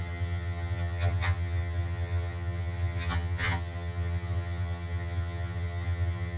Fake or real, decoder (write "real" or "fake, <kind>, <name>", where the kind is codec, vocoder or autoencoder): fake, vocoder, HiFi-GAN